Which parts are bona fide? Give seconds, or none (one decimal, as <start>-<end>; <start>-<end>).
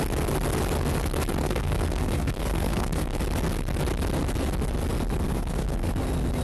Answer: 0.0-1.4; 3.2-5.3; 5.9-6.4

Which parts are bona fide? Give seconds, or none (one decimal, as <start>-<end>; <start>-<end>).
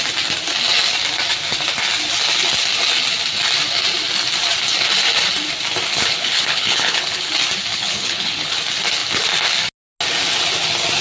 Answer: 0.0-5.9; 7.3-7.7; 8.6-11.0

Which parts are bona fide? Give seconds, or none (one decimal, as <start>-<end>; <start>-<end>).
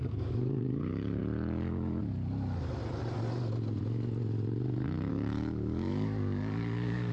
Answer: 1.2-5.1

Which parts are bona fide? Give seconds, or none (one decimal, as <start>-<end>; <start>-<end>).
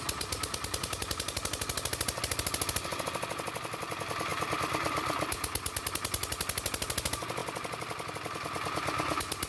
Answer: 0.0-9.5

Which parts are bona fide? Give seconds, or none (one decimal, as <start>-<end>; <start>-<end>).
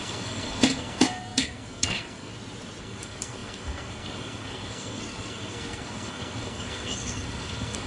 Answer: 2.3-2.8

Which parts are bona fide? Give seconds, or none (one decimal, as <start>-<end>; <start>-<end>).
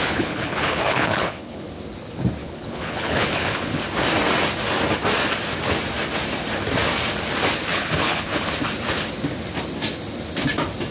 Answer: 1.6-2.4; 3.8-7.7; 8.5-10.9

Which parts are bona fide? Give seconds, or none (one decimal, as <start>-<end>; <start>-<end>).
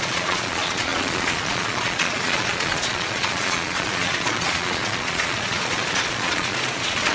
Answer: none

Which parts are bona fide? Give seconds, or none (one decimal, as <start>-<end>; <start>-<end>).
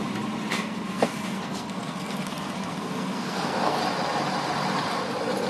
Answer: 0.0-0.5; 3.8-5.5